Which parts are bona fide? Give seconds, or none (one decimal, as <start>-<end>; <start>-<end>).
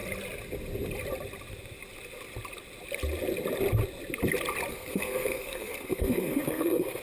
0.0-4.7